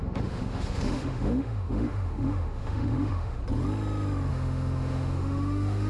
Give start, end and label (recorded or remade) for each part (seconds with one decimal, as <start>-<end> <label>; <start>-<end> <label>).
0.0-3.4 remade; 3.4-4.3 recorded; 4.3-5.9 remade